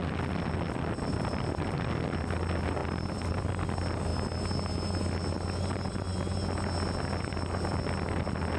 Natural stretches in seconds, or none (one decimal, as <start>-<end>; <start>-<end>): 0.0-2.8; 3.4-8.6